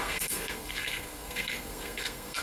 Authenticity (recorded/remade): remade